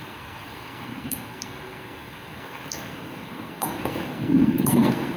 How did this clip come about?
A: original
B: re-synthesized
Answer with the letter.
B